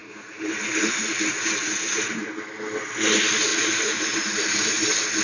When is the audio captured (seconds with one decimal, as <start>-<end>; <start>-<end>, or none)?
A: 2.3-3.5; 4.7-5.2